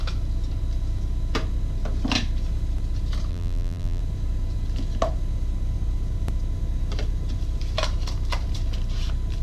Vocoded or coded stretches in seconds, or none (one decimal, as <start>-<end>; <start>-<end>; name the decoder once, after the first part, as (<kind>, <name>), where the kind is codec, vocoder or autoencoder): 3.3-4.0 (vocoder, BigVGAN v2)

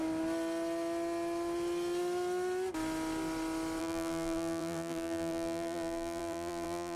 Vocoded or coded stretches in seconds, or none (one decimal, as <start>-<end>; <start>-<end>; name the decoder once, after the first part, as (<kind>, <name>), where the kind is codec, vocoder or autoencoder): 3.8-7.0 (vocoder, BigVGAN v2)

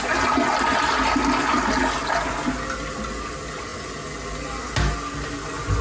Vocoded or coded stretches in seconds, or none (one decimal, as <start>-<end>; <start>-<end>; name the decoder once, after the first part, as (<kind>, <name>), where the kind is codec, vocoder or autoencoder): none

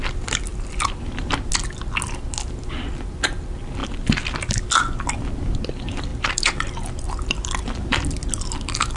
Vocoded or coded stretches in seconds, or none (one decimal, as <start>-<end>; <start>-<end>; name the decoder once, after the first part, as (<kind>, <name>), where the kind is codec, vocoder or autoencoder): 0.5-1.5 (vocoder, BigVGAN v2); 3.8-4.6; 6.1-8.0

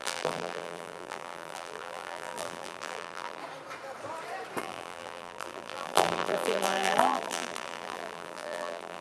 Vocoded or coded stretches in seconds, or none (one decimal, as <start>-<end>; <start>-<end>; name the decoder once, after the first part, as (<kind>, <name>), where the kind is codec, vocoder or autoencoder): 0.0-3.4 (vocoder, BigVGAN v2); 4.6-9.0

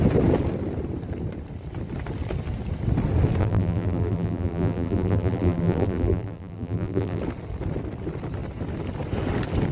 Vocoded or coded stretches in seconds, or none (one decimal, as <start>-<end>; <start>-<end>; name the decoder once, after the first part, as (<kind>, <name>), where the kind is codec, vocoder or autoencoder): 3.4-7.2 (vocoder, BigVGAN v2)

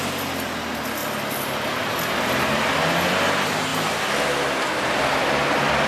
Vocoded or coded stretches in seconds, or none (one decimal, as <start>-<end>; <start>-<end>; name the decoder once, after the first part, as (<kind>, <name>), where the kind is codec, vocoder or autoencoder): none